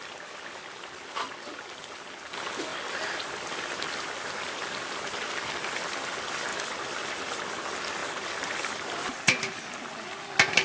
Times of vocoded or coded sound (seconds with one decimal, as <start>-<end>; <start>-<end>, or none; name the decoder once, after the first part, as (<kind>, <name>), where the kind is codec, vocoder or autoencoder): 6.5-7.6 (vocoder, BigVGAN v2); 8.0-8.8